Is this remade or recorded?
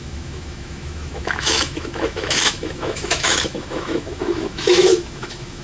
remade